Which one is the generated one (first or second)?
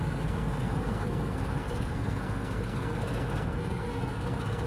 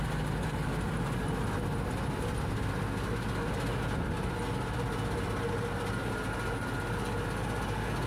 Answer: first